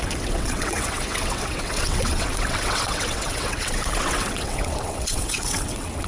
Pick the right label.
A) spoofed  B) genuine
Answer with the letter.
A